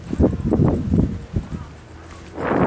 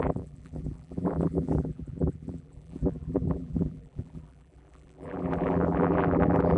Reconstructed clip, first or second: second